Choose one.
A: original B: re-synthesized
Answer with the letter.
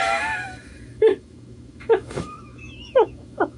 B